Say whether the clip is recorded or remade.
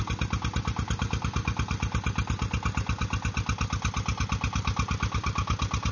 recorded